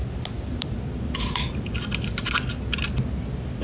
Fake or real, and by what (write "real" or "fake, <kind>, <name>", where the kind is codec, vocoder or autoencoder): real